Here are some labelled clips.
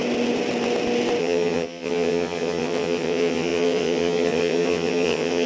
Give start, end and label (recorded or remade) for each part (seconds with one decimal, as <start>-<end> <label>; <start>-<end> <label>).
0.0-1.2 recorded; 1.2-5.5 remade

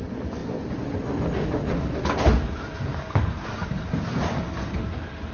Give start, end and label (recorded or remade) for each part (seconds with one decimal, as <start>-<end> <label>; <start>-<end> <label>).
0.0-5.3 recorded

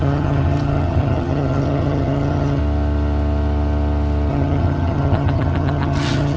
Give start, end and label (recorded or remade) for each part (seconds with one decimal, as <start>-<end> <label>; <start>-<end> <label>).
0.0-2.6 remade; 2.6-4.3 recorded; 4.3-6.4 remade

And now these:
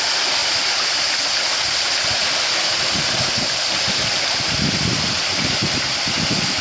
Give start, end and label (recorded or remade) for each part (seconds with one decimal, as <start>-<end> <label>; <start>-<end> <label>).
0.0-6.6 recorded

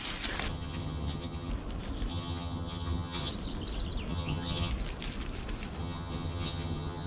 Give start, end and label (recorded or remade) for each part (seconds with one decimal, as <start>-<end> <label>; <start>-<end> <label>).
0.0-0.5 recorded; 0.5-1.5 remade; 1.5-2.1 recorded; 2.1-3.3 remade; 3.3-4.1 recorded; 4.1-4.7 remade; 4.7-5.8 recorded; 5.8-7.1 remade